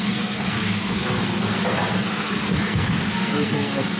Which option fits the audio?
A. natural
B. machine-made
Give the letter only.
B